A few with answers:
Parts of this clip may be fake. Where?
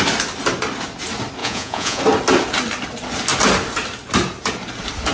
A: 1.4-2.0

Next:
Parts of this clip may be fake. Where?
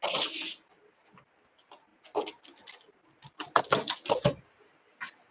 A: none